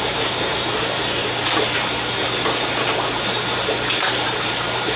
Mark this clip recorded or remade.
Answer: recorded